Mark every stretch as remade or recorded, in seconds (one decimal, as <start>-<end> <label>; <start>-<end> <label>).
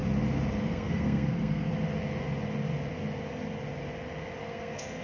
0.0-0.6 recorded; 0.6-1.7 remade; 1.7-4.4 recorded; 4.4-5.0 remade